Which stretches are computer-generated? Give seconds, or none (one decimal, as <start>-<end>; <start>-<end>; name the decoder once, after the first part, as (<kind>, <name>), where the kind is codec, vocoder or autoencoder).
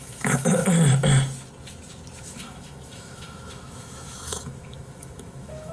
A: 0.0-0.6 (autoencoder, DAC-VAE); 2.2-5.7